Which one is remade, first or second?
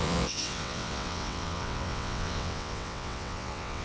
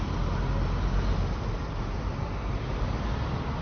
first